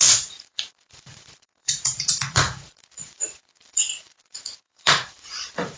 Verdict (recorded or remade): remade